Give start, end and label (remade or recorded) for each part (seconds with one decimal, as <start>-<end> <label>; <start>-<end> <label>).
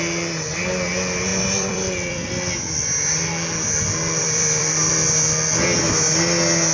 0.0-1.3 recorded; 1.3-2.3 remade; 2.3-4.2 recorded; 4.2-4.9 remade; 4.9-6.7 recorded